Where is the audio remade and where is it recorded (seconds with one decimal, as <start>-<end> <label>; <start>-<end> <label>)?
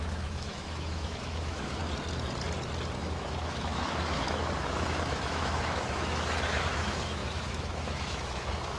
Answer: 0.0-1.8 remade; 1.8-3.0 recorded; 3.0-8.8 remade